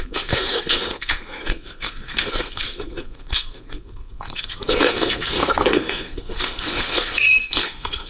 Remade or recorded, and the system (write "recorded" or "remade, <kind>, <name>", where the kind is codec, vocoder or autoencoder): remade, codec, SNAC